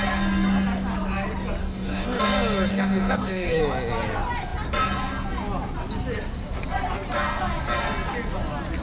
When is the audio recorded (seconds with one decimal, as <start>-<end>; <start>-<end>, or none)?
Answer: 0.0-1.6; 2.2-2.7; 3.6-8.8